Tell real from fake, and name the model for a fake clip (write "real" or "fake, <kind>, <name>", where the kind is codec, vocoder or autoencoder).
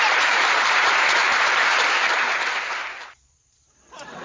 fake, vocoder, BigVGAN v2